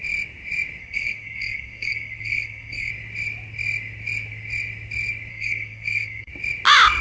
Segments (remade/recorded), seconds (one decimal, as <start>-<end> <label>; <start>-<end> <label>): 0.0-0.8 recorded; 0.8-2.9 remade; 2.9-5.3 recorded; 5.3-6.3 remade; 6.3-7.0 recorded